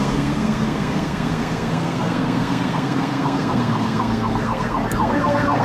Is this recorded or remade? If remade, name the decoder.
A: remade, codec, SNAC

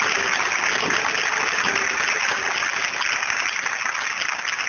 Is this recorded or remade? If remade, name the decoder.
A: recorded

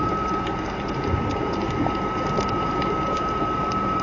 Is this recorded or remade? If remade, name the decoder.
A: remade, vocoder, BigVGAN v2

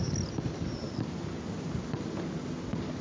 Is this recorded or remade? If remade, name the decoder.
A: recorded